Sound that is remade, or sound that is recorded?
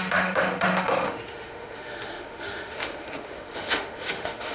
remade